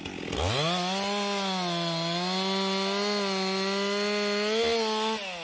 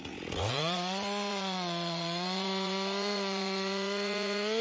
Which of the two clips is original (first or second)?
first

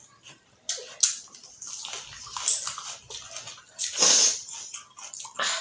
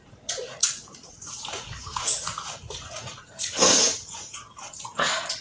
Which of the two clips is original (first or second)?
first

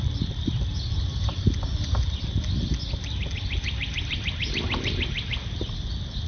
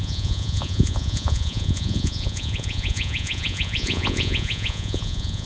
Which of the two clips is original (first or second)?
first